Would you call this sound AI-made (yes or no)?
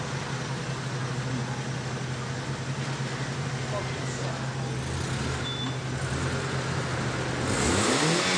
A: no